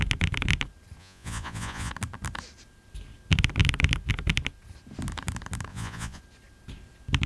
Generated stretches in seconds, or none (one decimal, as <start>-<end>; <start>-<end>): 1.0-1.9; 5.7-6.2